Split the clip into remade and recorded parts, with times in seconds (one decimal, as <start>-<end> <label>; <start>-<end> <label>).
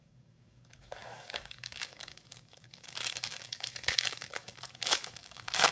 0.0-5.7 remade